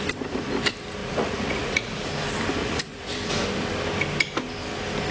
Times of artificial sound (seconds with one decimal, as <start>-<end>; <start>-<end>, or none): 1.0-2.1; 2.6-3.1